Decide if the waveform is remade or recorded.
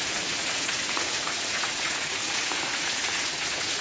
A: remade